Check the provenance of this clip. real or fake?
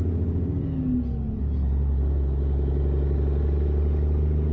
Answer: real